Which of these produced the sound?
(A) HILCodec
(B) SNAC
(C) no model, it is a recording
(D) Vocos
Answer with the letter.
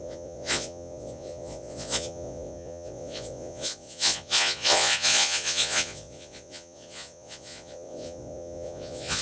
D